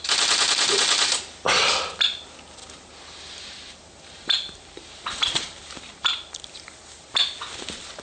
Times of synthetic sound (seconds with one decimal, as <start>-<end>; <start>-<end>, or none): 2.6-7.4